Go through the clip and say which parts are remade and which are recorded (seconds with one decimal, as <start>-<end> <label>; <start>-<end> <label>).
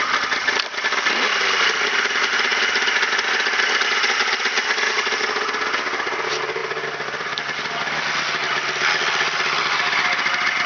0.0-10.7 recorded